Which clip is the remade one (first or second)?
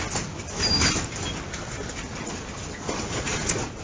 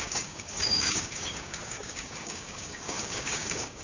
second